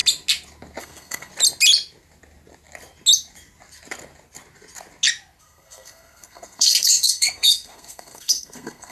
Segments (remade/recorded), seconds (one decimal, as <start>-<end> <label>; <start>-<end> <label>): 0.0-0.8 recorded; 0.8-1.3 remade; 1.3-5.4 recorded; 5.4-8.9 remade